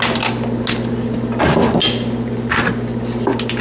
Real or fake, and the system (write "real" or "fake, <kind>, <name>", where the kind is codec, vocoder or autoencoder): real